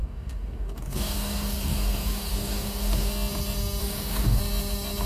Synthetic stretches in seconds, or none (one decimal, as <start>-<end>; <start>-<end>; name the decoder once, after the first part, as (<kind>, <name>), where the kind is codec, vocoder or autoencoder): 0.0-3.1 (codec, DAC); 3.8-4.4